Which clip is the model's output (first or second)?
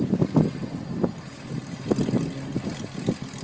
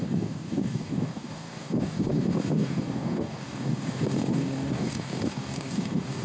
second